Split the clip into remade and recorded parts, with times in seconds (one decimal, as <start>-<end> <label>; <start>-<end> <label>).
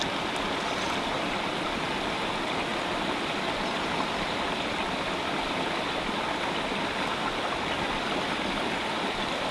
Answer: 0.0-9.5 recorded